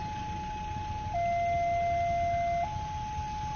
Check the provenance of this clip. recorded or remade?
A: recorded